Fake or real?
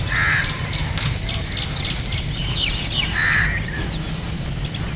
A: real